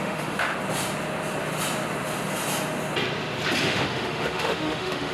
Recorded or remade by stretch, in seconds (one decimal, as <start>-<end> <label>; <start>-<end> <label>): 0.0-0.5 remade; 0.5-3.6 recorded; 3.6-5.1 remade